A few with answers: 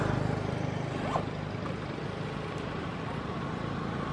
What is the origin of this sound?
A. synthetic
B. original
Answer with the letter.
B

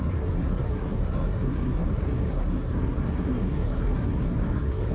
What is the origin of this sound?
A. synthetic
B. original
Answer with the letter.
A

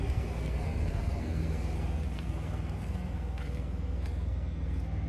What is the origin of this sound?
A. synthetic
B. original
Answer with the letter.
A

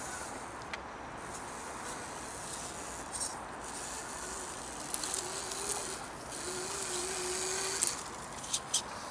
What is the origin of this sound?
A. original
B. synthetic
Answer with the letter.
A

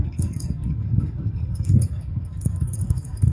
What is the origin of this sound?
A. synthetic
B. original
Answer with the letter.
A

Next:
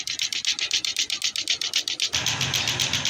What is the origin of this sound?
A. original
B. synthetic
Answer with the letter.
A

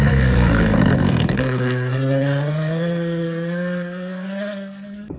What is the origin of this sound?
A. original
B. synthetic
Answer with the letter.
B